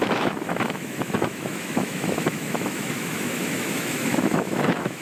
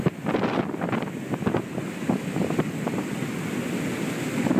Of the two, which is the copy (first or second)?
first